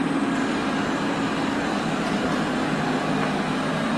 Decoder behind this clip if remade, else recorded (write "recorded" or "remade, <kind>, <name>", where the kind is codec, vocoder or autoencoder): recorded